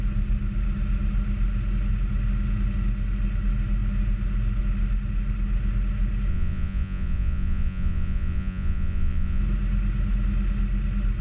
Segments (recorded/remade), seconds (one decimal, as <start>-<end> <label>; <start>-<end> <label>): 0.0-6.3 recorded; 6.3-9.4 remade; 9.4-11.2 recorded